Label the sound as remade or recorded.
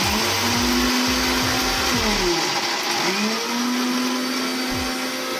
recorded